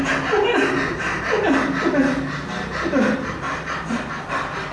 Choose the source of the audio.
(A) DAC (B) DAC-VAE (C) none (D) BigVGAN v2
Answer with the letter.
D